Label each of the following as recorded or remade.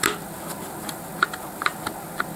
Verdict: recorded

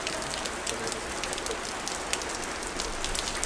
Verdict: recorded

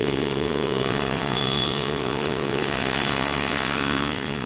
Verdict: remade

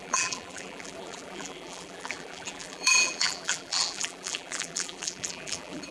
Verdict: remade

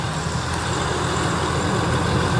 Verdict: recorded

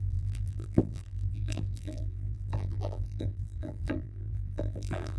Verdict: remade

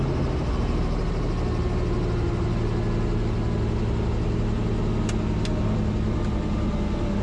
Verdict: recorded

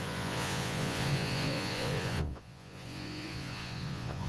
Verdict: remade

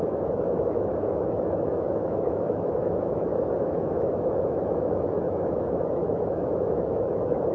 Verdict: remade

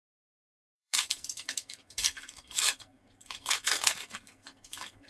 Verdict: remade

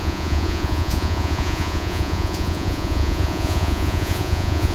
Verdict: remade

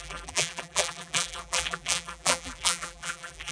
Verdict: remade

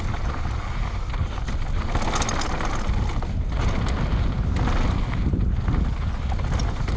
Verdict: recorded